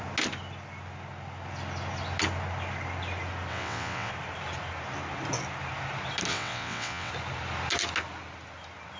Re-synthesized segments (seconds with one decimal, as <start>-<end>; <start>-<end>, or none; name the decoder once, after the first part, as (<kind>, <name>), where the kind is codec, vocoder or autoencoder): 3.5-4.1 (vocoder, WaveNeXt); 6.3-7.1